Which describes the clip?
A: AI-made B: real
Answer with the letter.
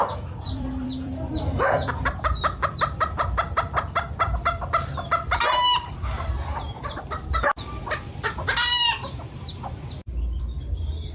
A